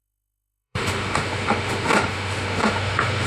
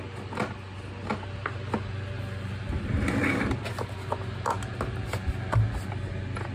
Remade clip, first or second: first